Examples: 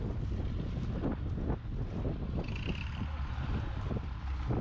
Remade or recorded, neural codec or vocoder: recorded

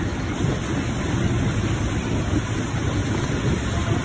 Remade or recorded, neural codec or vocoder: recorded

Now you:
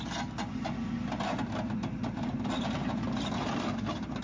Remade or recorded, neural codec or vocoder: recorded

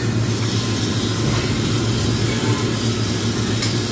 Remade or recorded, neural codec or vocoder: recorded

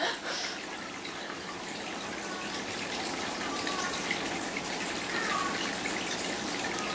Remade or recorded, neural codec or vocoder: recorded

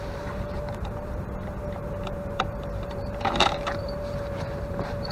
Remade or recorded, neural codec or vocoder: remade, vocoder, BigVGAN v2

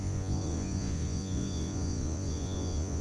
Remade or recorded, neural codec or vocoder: remade, vocoder, Vocos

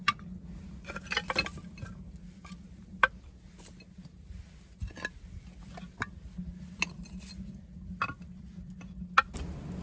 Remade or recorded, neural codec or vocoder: recorded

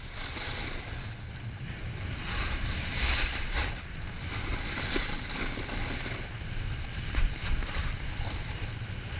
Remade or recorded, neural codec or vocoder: recorded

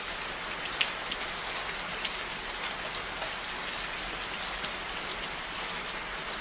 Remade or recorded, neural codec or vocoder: recorded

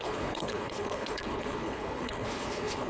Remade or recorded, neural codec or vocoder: remade, codec, HILCodec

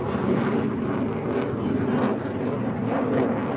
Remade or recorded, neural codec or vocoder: recorded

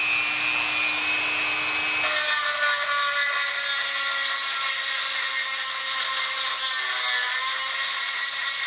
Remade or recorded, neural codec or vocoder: recorded